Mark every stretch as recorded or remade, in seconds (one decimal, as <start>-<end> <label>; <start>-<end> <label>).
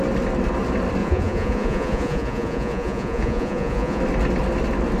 0.0-1.0 recorded; 1.0-4.0 remade; 4.0-5.0 recorded